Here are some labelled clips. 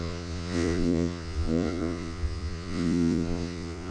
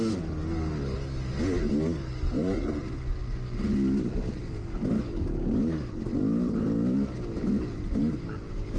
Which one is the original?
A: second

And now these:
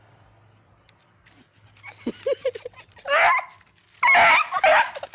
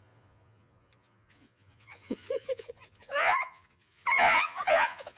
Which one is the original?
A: first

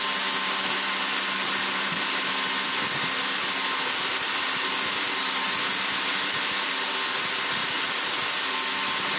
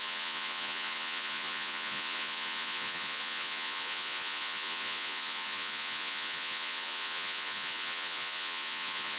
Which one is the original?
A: first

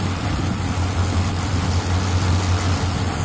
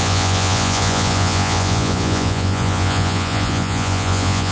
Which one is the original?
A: first